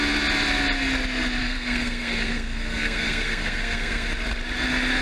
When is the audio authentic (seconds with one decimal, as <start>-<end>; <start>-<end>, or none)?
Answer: 0.0-1.4; 4.1-5.0